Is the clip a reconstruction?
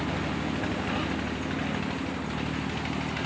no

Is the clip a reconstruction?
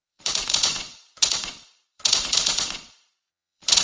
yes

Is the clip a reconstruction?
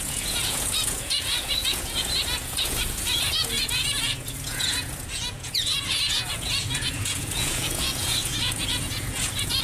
yes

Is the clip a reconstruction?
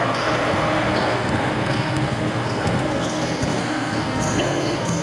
yes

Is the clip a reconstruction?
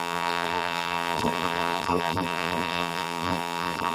yes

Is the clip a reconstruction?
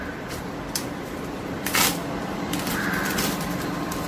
yes